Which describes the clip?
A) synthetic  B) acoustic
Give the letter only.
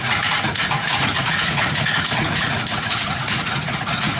A